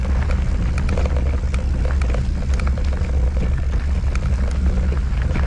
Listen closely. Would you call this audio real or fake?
real